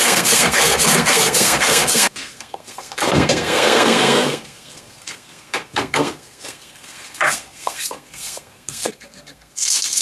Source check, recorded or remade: remade